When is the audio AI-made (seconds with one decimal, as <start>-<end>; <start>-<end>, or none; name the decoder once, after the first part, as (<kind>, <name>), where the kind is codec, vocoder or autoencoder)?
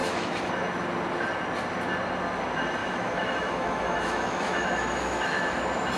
0.0-0.5 (autoencoder, DAC-VAE); 2.8-5.6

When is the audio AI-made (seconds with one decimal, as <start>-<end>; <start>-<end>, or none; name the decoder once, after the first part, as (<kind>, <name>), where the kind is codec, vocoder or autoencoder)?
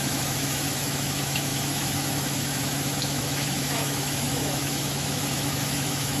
0.0-6.2 (autoencoder, DAC-VAE)